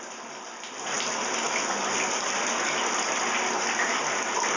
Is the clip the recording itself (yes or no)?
yes